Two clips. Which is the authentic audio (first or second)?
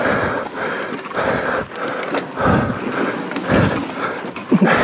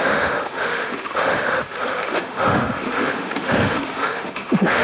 first